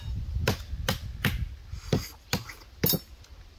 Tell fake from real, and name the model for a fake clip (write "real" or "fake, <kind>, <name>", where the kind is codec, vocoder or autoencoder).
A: real